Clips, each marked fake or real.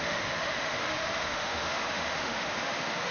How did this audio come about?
fake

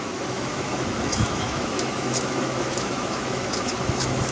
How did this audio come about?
fake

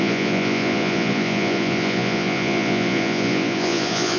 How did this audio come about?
fake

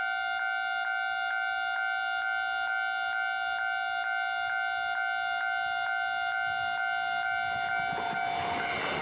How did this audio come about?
real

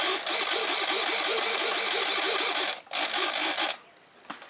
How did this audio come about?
real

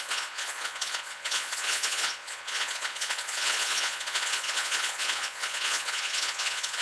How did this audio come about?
fake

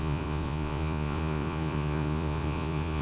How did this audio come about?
fake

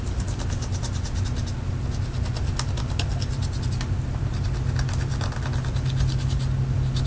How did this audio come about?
real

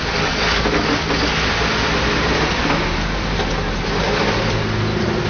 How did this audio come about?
real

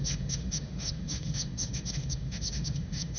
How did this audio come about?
fake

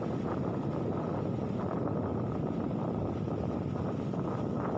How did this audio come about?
real